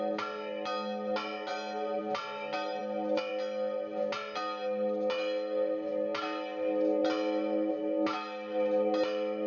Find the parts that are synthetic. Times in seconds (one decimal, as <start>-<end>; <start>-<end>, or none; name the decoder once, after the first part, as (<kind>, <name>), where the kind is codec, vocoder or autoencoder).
none